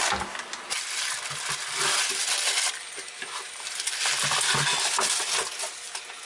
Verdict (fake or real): real